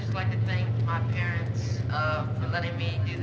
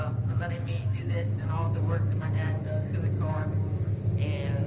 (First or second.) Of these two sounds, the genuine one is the first